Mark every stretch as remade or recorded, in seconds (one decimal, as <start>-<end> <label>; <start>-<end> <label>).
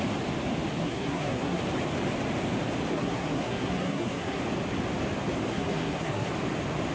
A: 0.0-0.8 recorded; 0.8-1.6 remade; 1.6-2.9 recorded; 2.9-4.4 remade; 4.4-5.5 recorded; 5.5-6.3 remade; 6.3-6.9 recorded